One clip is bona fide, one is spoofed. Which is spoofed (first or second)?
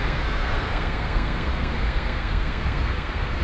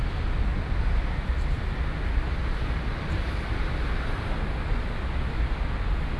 first